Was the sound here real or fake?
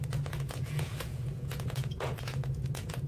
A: fake